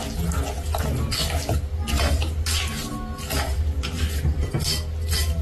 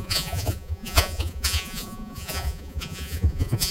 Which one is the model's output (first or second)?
second